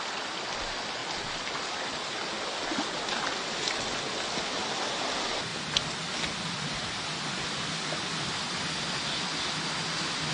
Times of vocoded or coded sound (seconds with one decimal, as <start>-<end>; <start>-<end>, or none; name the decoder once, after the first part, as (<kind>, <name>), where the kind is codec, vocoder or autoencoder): none